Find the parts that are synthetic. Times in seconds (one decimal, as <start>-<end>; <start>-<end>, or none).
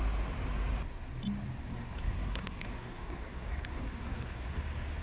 1.6-4.6